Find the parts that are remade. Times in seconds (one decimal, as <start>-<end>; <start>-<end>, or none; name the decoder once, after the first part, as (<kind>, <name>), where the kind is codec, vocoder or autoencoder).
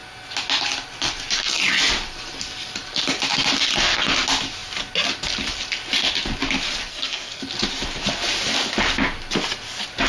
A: 6.9-7.4 (codec, SNAC)